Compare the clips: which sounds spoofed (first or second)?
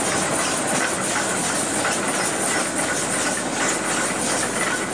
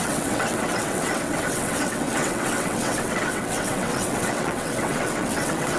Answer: second